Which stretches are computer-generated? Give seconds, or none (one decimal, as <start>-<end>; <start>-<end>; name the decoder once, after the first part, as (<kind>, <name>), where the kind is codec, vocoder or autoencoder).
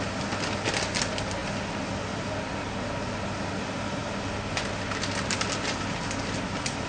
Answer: none